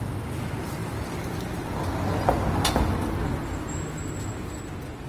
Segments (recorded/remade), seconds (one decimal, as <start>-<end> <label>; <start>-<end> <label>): 0.0-5.1 recorded